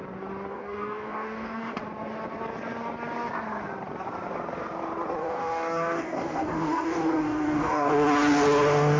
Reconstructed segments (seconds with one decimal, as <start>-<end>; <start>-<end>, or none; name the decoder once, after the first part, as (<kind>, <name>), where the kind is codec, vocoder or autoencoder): 0.5-1.8 (codec, DAC); 5.2-7.9